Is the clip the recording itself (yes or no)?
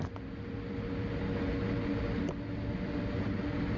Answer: yes